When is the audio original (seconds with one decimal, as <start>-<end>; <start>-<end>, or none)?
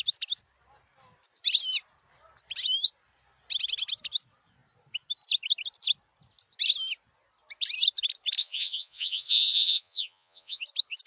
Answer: 0.0-8.4; 10.6-11.1